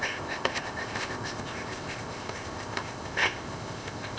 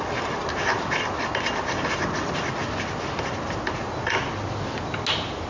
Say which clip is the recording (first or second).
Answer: second